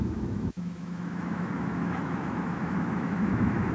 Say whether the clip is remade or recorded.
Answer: remade